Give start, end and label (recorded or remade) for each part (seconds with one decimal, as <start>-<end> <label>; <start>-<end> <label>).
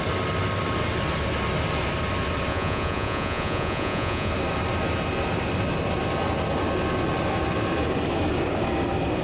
0.0-2.5 recorded; 2.5-4.3 remade; 4.3-9.2 recorded